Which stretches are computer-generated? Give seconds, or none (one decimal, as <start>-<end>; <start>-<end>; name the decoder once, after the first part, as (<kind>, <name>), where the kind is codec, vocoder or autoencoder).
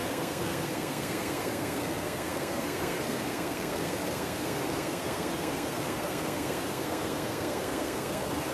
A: 0.0-8.5 (codec, SNAC)